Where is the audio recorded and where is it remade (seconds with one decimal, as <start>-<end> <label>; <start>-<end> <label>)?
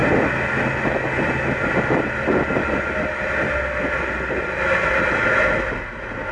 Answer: 0.0-6.3 recorded